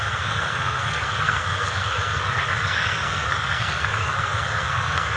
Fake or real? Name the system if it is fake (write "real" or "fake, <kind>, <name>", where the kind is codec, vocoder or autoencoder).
fake, codec, SNAC